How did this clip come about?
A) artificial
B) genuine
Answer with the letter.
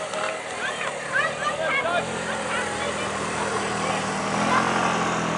B